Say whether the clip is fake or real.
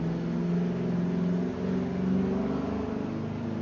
real